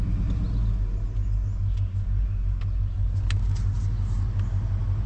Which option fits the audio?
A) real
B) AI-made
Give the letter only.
A